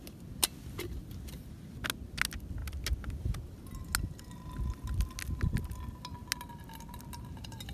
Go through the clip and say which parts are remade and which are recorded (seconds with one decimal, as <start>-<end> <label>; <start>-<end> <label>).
0.0-7.7 recorded